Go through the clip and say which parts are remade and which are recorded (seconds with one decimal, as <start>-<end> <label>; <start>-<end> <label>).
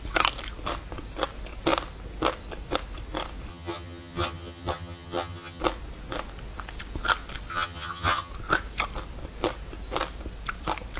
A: 0.0-3.5 recorded; 3.5-5.6 remade; 5.6-7.5 recorded; 7.5-8.3 remade; 8.3-11.0 recorded